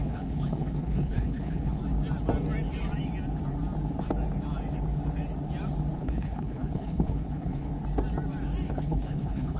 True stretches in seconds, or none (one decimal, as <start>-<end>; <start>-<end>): 1.8-6.0; 7.7-8.7